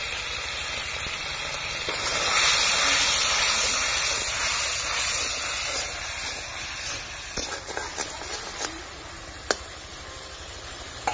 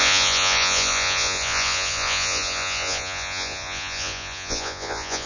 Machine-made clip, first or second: second